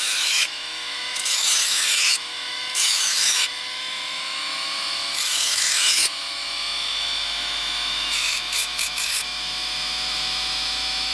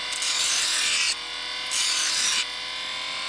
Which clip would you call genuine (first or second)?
second